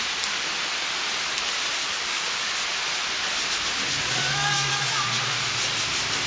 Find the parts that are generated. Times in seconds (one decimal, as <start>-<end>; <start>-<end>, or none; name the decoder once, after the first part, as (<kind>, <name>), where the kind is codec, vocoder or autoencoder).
1.8-2.5 (codec, DAC); 3.9-5.1

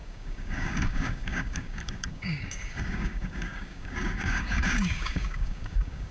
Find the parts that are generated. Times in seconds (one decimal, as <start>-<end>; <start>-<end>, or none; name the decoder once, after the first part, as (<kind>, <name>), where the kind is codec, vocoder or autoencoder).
0.0-6.1 (codec, DAC)